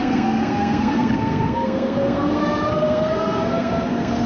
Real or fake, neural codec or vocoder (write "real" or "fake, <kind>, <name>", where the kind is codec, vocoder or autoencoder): fake, codec, SNAC